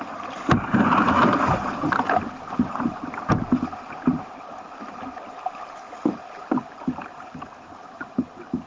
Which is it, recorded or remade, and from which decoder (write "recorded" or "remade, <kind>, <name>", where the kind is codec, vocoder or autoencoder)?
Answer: recorded